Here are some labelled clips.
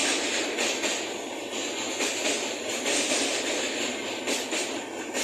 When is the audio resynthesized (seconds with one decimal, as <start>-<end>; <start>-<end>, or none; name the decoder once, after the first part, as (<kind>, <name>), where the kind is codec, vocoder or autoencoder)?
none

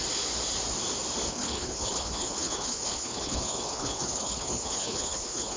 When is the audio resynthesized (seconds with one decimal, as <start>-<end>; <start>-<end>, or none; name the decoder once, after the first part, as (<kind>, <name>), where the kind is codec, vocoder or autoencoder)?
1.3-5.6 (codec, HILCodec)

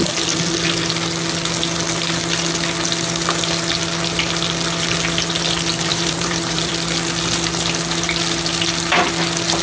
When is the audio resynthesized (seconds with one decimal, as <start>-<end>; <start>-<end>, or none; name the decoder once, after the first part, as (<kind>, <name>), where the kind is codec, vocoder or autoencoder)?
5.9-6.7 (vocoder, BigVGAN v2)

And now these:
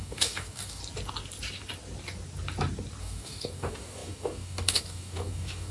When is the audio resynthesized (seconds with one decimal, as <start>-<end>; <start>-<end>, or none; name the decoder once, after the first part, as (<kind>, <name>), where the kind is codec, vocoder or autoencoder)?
0.0-0.8 (codec, DAC); 3.0-5.7

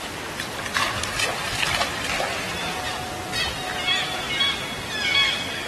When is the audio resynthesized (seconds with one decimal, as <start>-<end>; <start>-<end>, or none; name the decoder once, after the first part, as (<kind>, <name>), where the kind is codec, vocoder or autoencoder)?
none

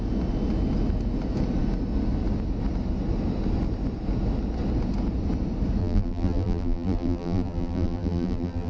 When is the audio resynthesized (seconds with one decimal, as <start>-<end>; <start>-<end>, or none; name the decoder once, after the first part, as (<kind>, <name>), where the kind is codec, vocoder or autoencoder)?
5.8-8.7 (vocoder, BigVGAN v2)

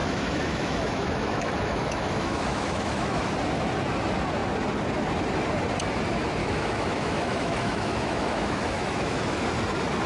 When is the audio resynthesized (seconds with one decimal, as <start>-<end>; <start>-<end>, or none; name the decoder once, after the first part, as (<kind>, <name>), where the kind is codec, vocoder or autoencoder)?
0.0-3.2 (autoencoder, DAC-VAE); 6.4-9.4